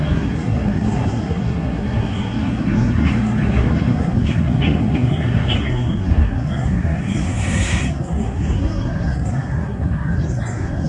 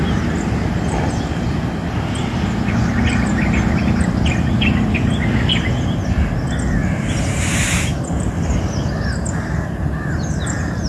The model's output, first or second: first